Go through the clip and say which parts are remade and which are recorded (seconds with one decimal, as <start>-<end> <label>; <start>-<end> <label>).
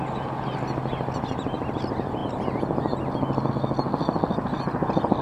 0.0-5.2 recorded